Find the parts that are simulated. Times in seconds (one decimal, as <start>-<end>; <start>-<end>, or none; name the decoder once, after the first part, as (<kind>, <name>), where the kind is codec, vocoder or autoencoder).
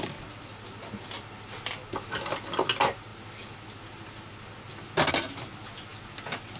none